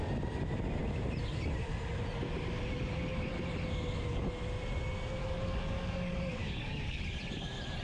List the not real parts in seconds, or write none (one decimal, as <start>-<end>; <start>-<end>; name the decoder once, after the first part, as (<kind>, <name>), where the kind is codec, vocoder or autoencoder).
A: 5.2-7.0 (codec, DAC)